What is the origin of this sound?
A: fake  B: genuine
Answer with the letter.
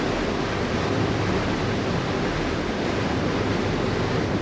B